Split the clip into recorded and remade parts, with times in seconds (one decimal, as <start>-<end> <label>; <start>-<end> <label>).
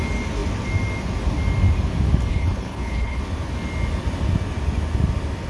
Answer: 0.0-2.3 recorded; 2.3-3.2 remade; 3.2-5.5 recorded